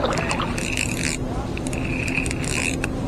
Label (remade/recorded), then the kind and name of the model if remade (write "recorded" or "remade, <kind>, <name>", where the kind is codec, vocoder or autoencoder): recorded